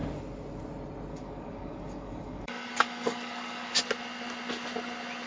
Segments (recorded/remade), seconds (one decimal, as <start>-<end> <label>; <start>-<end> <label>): 0.0-1.1 recorded; 1.1-3.8 remade; 3.8-5.3 recorded